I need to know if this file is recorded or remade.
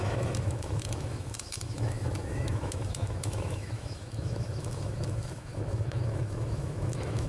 remade